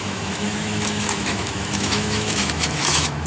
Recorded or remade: remade